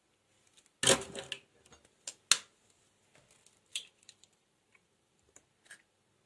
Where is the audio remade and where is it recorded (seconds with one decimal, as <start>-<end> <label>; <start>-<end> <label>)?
0.0-3.7 recorded; 3.7-5.4 remade; 5.4-6.3 recorded